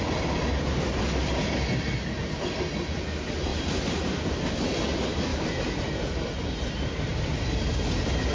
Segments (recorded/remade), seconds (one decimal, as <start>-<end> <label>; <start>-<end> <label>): 0.0-2.2 recorded; 2.2-3.0 remade; 3.0-3.5 recorded; 3.5-4.5 remade; 4.5-5.3 recorded; 5.3-5.8 remade; 5.8-8.3 recorded